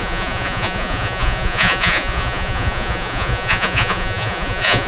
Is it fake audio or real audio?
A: fake